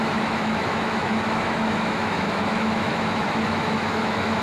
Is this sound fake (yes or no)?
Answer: yes